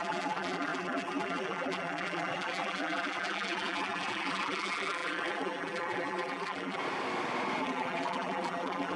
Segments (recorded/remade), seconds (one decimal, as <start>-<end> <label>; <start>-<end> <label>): 0.0-6.8 remade; 6.8-7.6 recorded; 7.6-9.0 remade